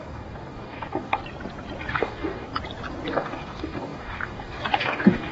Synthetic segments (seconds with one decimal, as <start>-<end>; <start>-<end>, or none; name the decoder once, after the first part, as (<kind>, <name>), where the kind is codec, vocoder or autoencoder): 0.0-1.2 (codec, DAC); 1.9-2.5; 3.1-5.3